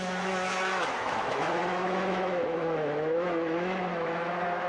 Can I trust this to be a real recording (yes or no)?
no